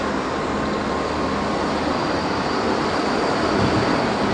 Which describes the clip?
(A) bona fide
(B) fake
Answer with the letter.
A